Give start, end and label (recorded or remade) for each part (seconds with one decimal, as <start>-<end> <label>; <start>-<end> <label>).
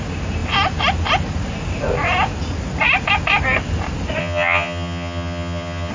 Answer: 0.0-4.2 recorded; 4.2-5.9 remade